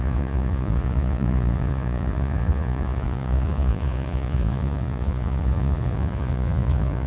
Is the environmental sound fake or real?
fake